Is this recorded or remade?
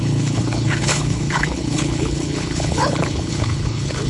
remade